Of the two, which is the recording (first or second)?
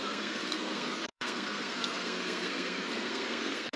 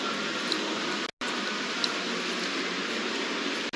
second